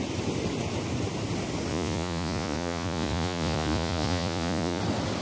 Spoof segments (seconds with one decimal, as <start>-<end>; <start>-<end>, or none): 1.7-4.8